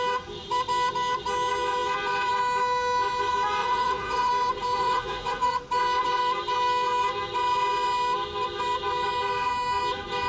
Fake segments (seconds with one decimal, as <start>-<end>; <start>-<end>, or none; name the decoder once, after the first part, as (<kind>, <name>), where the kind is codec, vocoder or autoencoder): 3.6-4.3 (vocoder, Vocos); 4.8-5.6